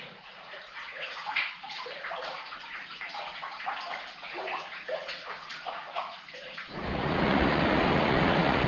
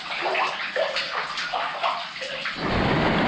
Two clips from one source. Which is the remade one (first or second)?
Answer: first